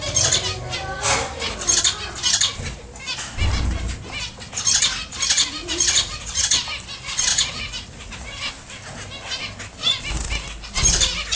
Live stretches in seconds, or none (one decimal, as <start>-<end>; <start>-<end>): 0.0-5.6; 6.4-7.3; 8.5-11.3